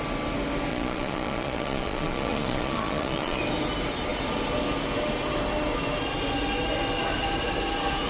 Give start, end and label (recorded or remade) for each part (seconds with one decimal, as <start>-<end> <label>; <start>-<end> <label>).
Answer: 0.0-0.7 recorded; 0.7-3.4 remade; 3.4-8.1 recorded